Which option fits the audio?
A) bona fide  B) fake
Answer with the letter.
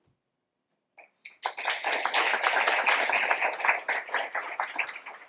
A